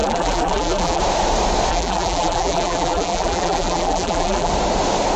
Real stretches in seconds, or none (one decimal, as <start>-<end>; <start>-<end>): 1.0-1.7; 4.5-5.2